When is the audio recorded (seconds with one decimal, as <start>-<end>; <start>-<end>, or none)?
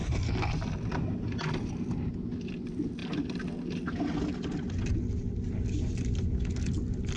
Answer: 0.0-7.2